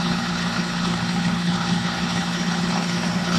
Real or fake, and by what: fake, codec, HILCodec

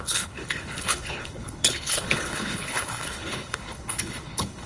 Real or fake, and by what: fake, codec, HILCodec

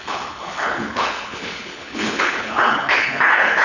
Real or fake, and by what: fake, codec, HILCodec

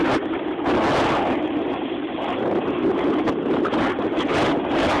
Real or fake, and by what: real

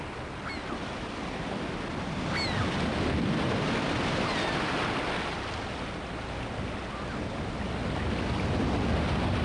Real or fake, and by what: real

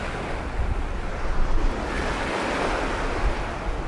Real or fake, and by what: real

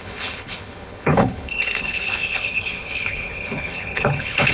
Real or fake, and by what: fake, codec, HILCodec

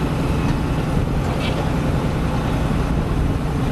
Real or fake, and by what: real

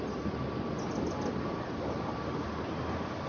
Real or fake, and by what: real